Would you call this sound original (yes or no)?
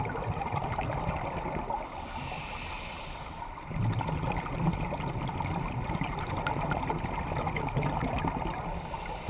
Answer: yes